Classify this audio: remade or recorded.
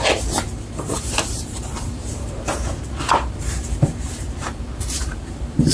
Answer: remade